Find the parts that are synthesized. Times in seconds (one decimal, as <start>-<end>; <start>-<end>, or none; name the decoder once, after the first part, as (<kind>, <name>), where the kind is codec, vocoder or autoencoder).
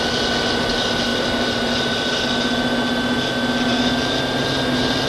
none